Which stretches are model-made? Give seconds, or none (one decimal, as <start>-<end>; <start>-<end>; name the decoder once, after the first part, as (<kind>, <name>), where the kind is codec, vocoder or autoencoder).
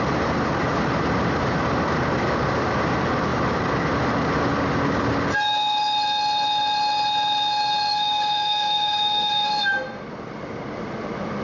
7.9-9.5 (codec, DAC)